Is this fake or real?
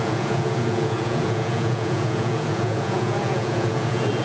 fake